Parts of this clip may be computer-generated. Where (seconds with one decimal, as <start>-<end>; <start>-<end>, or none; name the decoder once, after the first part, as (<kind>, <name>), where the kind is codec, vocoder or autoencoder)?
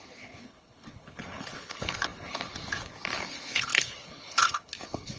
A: 0.0-5.2 (codec, HILCodec)